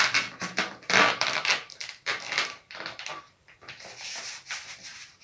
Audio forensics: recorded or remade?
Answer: remade